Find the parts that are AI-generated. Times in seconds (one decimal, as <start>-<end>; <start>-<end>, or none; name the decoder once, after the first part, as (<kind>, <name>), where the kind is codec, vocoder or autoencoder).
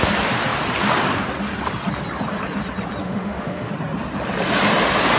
3.0-3.7 (autoencoder, DAC-VAE)